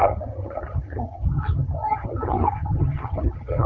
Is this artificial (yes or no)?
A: yes